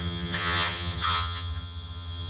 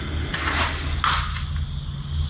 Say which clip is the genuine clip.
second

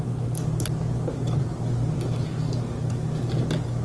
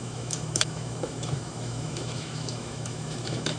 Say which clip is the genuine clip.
first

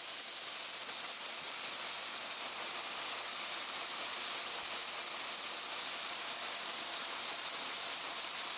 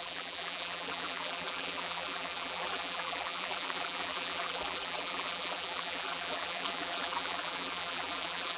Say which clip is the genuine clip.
first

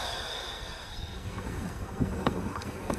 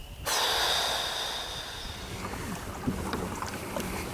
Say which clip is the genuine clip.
second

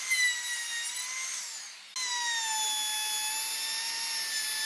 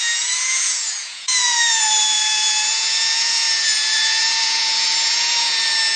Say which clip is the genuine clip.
first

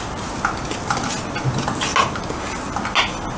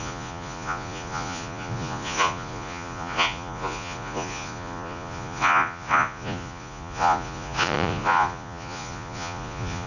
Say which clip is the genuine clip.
first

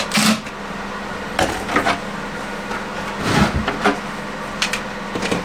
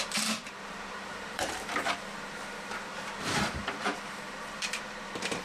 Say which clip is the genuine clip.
first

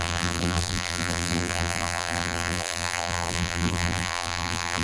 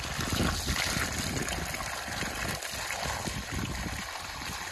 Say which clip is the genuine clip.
second